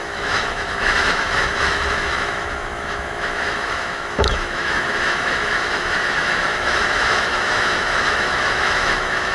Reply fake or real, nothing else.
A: fake